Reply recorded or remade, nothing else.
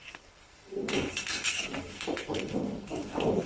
remade